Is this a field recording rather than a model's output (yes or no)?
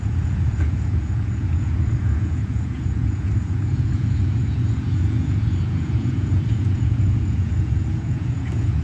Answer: no